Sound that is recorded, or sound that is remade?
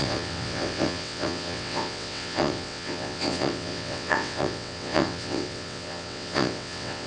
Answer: remade